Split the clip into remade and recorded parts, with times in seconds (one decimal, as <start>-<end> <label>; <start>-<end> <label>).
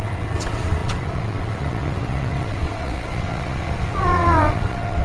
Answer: 0.0-5.0 remade